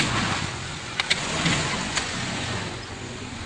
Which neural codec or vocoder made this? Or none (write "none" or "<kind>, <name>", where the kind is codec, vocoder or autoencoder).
vocoder, Vocos